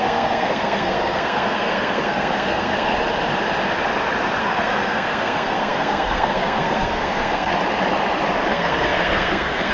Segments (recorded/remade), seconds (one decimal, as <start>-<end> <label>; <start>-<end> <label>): 0.0-2.9 remade; 2.9-4.4 recorded; 4.4-7.5 remade; 7.5-8.5 recorded; 8.5-9.7 remade